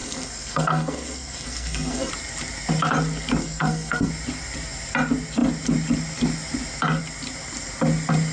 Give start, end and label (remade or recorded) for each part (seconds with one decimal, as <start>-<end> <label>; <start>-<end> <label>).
0.0-2.1 remade; 2.1-3.4 recorded; 3.4-4.1 remade; 4.1-8.3 recorded